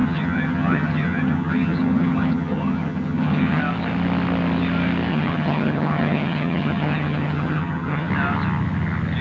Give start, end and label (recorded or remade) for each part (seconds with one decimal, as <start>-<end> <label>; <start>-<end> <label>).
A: 0.0-3.6 remade; 3.6-5.1 recorded; 5.1-8.1 remade; 8.1-9.2 recorded